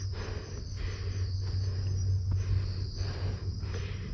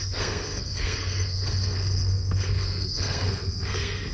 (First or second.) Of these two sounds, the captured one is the first